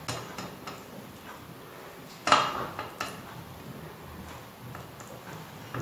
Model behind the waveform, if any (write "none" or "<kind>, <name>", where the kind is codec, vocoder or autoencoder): none